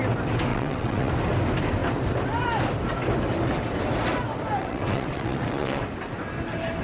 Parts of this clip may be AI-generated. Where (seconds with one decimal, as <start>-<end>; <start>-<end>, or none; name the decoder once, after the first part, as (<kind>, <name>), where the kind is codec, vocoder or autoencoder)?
0.5-1.1 (vocoder, WaveNeXt); 4.6-5.8